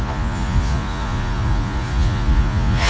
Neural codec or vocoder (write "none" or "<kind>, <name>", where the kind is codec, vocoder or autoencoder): vocoder, Vocos